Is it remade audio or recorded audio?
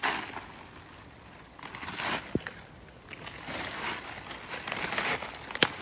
recorded